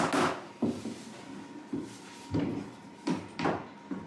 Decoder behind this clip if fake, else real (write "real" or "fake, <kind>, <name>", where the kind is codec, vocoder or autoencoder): real